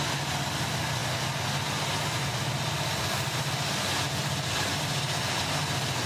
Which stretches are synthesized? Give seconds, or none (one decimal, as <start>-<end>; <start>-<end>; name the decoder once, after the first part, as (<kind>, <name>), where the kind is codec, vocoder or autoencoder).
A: none